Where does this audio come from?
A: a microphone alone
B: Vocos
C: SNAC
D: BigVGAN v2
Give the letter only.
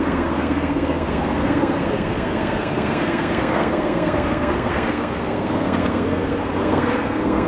C